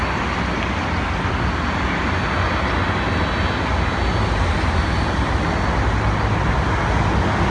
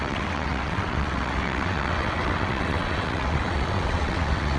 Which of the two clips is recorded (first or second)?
first